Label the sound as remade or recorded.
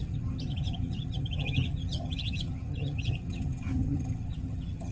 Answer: remade